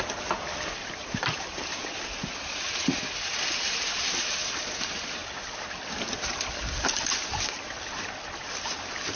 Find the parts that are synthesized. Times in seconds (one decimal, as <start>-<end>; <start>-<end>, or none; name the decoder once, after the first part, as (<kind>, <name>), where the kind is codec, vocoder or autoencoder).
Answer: none